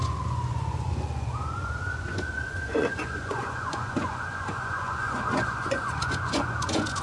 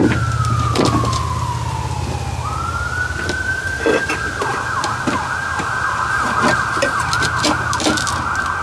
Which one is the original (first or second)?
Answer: second